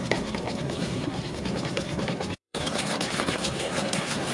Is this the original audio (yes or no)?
no